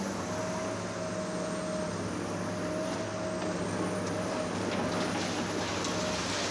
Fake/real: real